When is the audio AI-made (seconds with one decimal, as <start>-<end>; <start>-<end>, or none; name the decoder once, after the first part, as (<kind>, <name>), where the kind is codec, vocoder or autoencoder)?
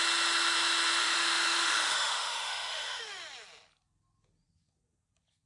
1.0-3.0 (autoencoder, DAC-VAE)